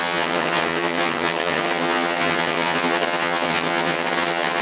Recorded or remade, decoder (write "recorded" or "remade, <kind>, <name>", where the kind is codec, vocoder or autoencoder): remade, vocoder, HiFi-GAN